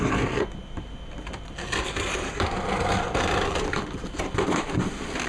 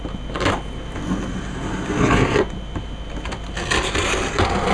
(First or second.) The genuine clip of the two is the second